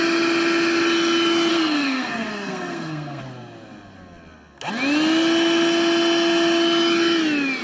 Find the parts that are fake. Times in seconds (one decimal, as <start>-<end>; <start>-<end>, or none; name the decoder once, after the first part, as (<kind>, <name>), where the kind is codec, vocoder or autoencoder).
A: 1.5-3.2 (codec, SNAC)